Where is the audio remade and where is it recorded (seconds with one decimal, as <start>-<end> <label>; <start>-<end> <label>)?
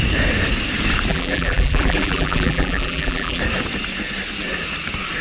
0.0-1.1 recorded; 1.1-3.4 remade; 3.4-5.2 recorded